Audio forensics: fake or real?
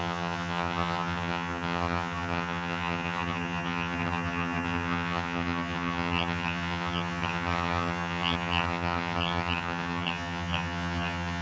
fake